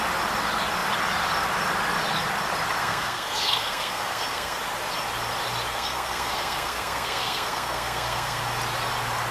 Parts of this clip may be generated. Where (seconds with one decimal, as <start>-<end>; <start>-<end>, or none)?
2.8-4.6; 5.7-8.4